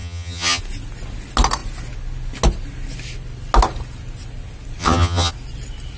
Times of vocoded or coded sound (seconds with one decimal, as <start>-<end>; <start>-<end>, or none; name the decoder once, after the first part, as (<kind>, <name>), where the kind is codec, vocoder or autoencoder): 0.0-0.6 (vocoder, HiFi-GAN); 4.8-5.3